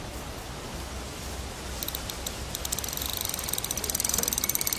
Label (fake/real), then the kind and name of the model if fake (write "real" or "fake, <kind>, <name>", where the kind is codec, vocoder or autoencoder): real